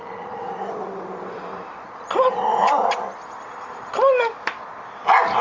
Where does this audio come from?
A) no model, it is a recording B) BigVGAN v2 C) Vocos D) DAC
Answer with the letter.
A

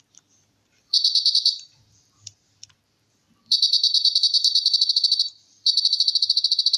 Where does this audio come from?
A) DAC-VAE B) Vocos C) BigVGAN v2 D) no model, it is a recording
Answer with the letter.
C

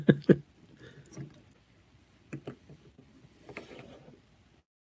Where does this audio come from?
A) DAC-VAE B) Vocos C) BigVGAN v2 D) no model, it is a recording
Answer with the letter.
D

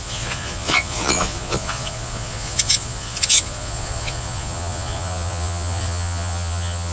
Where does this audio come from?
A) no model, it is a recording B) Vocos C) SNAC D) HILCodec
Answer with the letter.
B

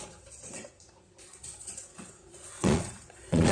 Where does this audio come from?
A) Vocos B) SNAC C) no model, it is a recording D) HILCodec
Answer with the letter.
A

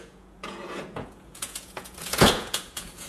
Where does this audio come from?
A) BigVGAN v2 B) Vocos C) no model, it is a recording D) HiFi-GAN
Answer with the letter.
B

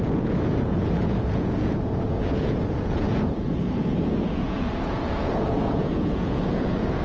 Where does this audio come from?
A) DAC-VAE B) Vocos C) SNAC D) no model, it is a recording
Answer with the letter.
B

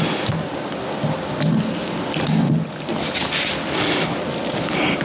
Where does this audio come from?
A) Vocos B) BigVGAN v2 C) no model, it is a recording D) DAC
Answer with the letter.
C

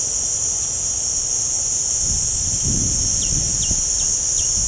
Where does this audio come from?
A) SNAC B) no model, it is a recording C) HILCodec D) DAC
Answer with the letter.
B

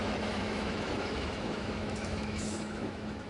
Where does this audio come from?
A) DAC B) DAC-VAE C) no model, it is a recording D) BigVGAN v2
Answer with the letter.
B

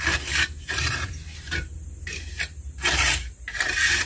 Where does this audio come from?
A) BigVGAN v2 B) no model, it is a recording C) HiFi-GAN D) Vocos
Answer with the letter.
A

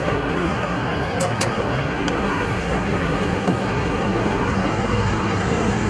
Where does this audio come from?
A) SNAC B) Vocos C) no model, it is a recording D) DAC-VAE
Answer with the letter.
A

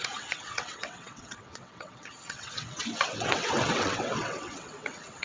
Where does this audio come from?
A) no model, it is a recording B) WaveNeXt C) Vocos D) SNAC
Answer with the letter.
B